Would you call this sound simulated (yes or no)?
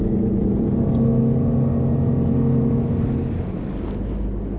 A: no